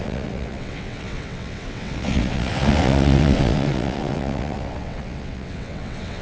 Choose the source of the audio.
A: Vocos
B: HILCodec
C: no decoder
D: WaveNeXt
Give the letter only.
D